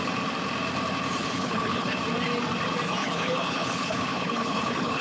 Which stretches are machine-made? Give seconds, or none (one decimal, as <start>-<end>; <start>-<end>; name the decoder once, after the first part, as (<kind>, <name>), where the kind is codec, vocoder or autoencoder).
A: 1.2-2.0 (codec, HILCodec); 3.0-5.0